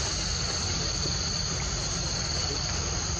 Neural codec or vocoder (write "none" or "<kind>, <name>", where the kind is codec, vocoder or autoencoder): vocoder, BigVGAN v2